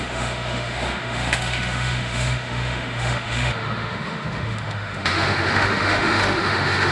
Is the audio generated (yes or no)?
yes